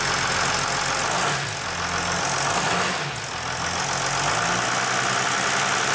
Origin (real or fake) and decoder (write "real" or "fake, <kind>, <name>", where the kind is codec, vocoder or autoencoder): real